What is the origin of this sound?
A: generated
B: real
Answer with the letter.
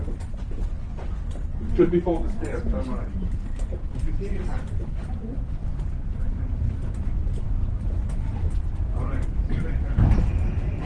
A